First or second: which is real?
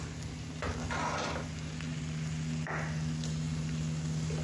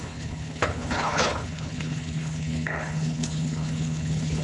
first